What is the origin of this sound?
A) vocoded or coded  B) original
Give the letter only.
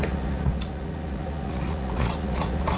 A